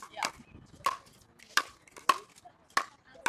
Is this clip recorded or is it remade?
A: recorded